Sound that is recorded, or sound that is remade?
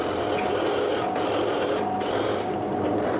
recorded